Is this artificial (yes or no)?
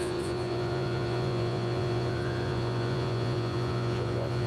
yes